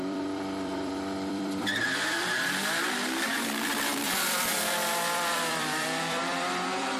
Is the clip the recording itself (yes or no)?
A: no